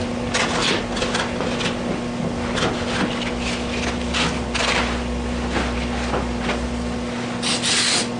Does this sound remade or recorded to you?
recorded